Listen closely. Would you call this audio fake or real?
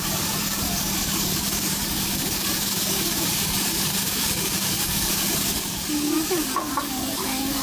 fake